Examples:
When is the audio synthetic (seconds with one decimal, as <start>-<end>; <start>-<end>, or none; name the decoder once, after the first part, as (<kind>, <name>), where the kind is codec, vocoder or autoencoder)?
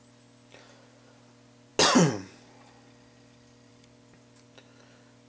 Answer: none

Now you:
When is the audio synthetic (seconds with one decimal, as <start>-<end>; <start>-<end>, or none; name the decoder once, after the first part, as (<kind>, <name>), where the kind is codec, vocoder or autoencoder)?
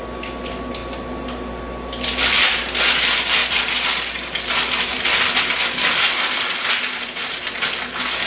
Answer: 4.9-5.5 (vocoder, BigVGAN v2)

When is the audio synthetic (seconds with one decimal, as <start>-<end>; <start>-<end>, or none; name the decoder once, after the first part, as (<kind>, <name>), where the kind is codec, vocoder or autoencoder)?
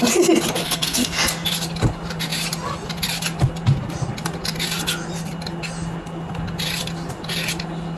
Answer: 0.6-1.2 (codec, SNAC)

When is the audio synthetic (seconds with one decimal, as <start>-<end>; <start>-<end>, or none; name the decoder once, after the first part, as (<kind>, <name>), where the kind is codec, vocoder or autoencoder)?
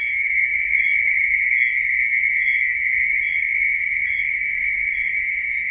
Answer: 0.5-1.2 (vocoder, BigVGAN v2); 2.9-5.2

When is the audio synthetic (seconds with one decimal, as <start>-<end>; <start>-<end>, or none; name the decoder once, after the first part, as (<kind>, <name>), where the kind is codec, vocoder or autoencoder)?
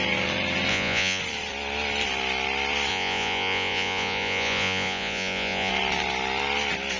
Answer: 0.7-1.2 (vocoder, Vocos); 2.9-5.7